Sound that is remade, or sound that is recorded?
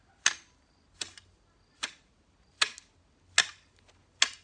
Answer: recorded